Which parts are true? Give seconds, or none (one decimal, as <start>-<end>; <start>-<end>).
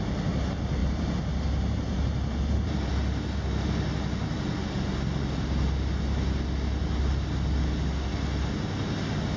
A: 0.0-0.8; 2.9-9.4